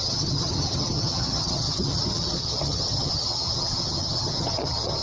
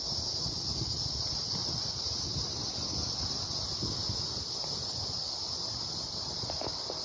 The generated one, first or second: first